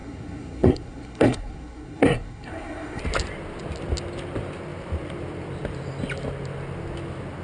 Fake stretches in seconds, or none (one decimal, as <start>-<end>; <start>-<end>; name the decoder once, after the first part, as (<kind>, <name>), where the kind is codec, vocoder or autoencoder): 0.0-3.0 (codec, SNAC)